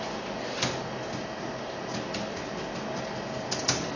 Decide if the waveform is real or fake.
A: real